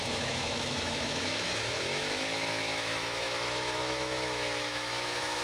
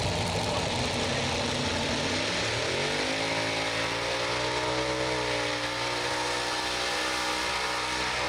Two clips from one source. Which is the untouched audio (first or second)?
second